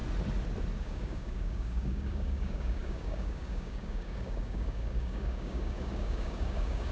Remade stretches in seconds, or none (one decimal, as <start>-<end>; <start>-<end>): 0.8-6.9